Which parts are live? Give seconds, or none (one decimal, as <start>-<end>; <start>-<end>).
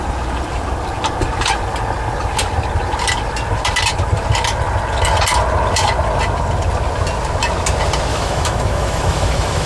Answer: 0.0-8.1